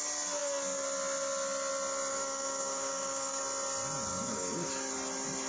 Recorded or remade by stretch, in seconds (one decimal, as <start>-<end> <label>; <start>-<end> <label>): 0.0-2.1 recorded; 2.1-3.4 remade; 3.4-4.1 recorded; 4.1-4.7 remade; 4.7-5.5 recorded

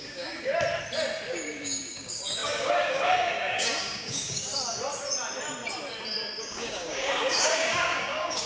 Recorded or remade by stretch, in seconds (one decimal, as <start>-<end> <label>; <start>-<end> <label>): 0.0-0.5 remade; 0.5-1.3 recorded; 1.3-4.5 remade; 4.5-6.4 recorded; 6.4-8.5 remade

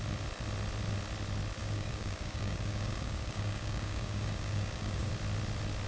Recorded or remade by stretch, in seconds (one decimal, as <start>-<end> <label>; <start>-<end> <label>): 0.0-1.6 recorded; 1.6-5.1 remade; 5.1-5.9 recorded